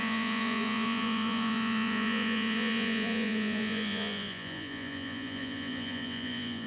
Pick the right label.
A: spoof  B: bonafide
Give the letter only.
A